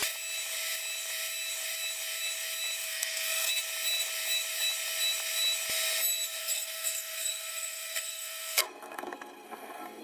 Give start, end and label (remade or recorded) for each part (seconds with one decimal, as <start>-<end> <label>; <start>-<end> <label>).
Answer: 0.0-2.8 recorded; 2.8-3.5 remade; 3.5-6.4 recorded; 6.4-10.0 remade